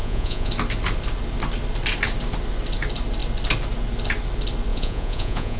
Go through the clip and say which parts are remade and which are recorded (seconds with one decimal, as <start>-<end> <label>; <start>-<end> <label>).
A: 0.0-0.5 remade; 0.5-4.7 recorded; 4.7-5.6 remade